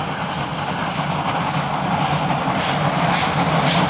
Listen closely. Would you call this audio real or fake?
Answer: real